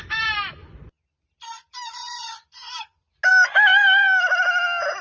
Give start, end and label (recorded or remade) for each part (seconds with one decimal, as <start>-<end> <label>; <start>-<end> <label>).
0.0-5.0 recorded